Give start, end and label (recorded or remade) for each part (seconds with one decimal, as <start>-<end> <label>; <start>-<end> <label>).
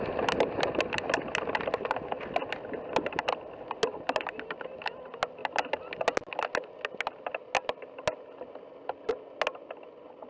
0.0-10.3 recorded